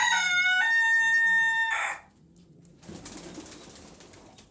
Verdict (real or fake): real